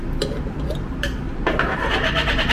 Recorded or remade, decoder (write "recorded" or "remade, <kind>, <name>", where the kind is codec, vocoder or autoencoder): recorded